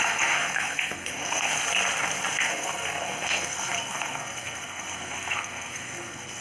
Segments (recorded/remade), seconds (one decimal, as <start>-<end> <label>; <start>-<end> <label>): 0.0-1.5 remade; 1.5-2.4 recorded; 2.4-6.4 remade